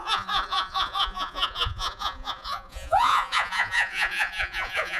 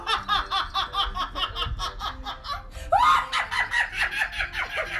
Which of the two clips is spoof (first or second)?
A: first